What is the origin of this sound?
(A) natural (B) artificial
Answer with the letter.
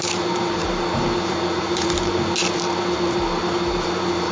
B